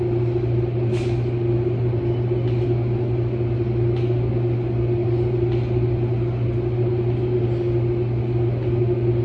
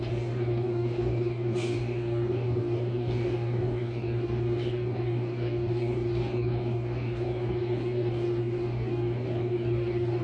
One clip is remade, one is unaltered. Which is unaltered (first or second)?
first